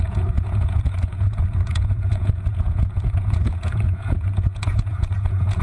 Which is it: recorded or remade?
remade